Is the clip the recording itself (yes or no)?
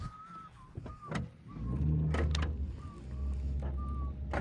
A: yes